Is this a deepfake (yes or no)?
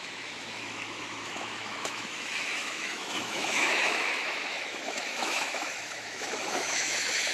yes